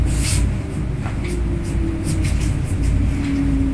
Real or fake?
real